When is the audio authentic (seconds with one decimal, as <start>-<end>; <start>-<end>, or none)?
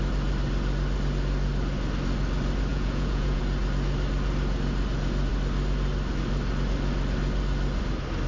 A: 0.0-2.7; 3.4-8.3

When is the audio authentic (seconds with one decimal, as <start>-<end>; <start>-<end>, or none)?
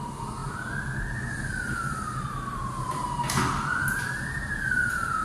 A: 0.0-5.2